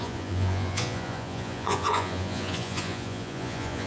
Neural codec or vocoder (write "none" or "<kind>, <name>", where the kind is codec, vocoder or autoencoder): vocoder, Vocos